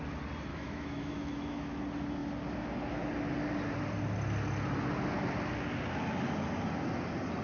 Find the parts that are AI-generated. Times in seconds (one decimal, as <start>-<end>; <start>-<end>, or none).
0.5-1.8